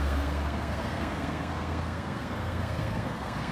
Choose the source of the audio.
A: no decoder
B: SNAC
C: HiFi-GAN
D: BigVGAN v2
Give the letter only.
B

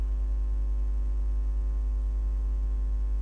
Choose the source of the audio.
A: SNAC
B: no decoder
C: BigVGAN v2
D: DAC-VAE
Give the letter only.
B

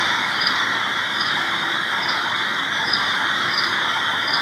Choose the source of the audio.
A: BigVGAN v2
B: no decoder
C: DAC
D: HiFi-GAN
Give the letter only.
C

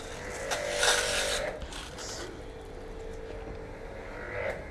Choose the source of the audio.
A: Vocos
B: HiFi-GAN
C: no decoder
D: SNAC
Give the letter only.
C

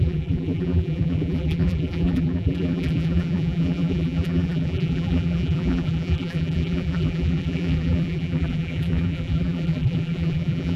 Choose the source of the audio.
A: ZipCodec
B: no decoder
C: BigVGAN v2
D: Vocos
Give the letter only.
C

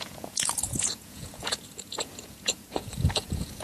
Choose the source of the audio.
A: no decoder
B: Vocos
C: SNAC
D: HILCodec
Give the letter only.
B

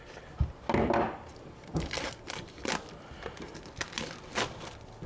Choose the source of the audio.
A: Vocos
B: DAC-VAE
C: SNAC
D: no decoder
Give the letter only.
D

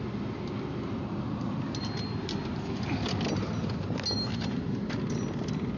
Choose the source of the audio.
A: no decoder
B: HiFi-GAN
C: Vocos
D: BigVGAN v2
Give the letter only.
A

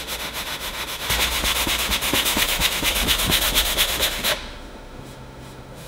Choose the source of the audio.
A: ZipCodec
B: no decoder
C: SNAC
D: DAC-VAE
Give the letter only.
D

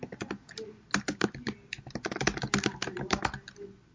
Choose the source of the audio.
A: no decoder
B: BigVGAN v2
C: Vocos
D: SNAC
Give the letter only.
A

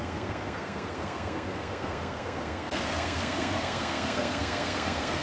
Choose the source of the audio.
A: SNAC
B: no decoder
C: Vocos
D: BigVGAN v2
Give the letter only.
A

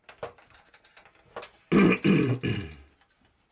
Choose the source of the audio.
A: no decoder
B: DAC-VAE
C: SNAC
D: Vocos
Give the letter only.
A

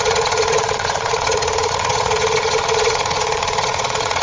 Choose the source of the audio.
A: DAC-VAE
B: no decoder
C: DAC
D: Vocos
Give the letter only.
D